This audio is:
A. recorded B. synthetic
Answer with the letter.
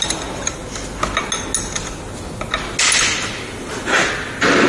A